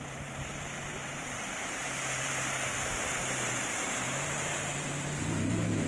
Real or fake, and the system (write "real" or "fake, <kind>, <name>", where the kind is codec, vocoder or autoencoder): fake, vocoder, BigVGAN v2